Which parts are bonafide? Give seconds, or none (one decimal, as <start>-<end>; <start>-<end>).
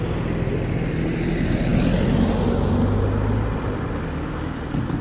0.0-5.0